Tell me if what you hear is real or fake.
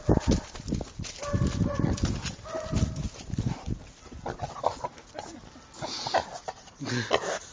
real